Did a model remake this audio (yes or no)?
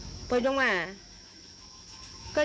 yes